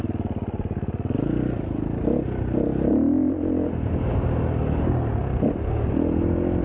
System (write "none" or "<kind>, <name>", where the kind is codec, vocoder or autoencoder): none